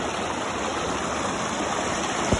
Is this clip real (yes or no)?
yes